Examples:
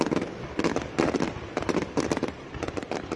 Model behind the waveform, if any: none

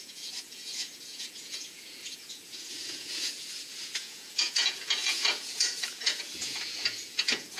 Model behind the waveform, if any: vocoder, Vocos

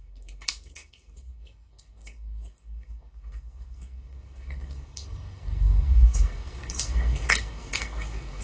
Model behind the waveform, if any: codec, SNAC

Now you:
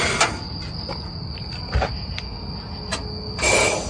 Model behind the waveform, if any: none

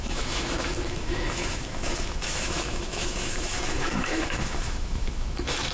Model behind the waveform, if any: autoencoder, DAC-VAE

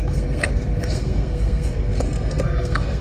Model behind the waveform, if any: codec, SNAC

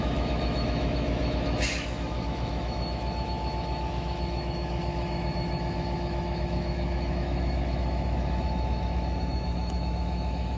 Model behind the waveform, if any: autoencoder, DAC-VAE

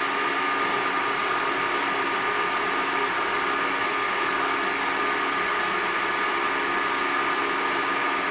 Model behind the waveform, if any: none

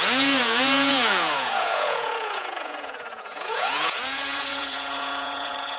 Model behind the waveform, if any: vocoder, Vocos